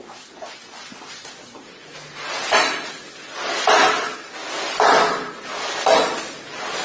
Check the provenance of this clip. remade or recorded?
recorded